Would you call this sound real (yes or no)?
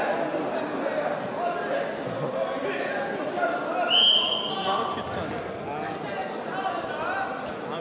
yes